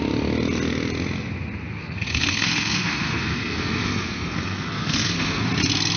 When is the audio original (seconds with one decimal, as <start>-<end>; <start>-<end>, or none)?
0.0-1.8; 5.4-6.0